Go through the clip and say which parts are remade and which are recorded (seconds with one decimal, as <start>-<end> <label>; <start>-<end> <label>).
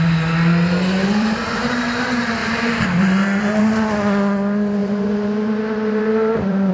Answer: 0.0-1.0 recorded; 1.0-2.0 remade; 2.0-2.4 recorded; 2.4-3.6 remade; 3.6-4.8 recorded; 4.8-6.7 remade